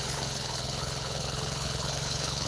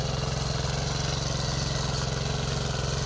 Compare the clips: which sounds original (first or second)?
second